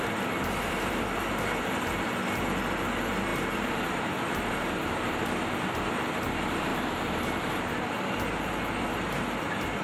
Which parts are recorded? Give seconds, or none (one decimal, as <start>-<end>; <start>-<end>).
0.0-3.3; 5.2-6.7; 7.6-9.8